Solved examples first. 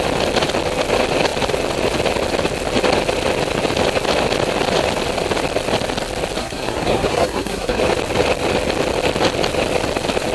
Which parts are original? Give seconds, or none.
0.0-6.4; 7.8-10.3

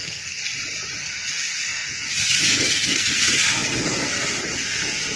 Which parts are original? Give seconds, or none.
0.4-1.0